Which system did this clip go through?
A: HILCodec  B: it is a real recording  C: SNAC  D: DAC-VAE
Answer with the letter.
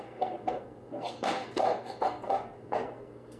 C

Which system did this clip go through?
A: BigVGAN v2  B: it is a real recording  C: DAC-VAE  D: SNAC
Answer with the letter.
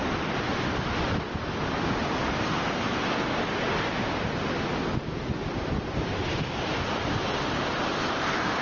B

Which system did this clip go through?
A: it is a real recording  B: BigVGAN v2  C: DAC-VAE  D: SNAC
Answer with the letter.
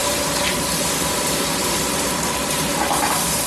B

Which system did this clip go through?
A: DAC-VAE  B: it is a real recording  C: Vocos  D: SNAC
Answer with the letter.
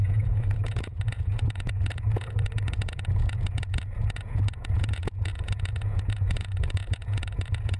C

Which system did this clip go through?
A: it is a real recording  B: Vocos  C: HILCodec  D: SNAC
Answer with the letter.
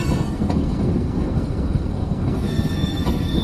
D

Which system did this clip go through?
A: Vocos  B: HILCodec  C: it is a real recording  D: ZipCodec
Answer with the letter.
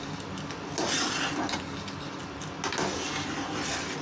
C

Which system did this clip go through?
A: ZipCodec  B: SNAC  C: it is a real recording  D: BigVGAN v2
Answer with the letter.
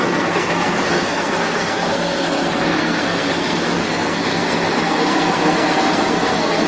B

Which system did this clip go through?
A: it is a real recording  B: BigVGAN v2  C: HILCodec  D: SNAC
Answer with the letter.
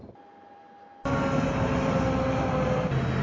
A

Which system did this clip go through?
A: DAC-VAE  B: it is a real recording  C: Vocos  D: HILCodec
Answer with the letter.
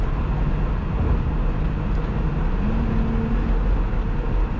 B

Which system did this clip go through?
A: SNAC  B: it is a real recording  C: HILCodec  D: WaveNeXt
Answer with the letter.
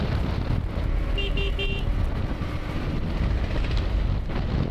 B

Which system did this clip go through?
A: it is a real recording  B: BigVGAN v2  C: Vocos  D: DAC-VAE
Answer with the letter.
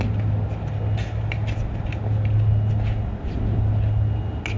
A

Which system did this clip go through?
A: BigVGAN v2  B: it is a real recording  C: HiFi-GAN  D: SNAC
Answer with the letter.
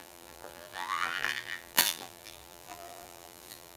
A